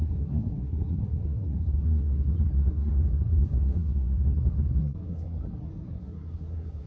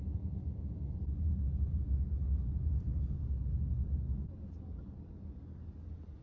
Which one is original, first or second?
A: second